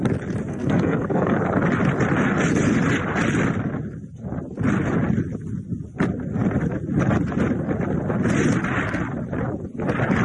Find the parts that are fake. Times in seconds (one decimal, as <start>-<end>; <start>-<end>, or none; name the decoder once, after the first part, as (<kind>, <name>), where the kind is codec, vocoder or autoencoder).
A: 0.5-1.4 (codec, SNAC)